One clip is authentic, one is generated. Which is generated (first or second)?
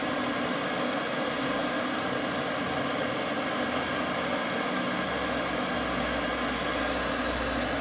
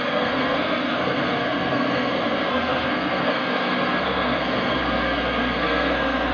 second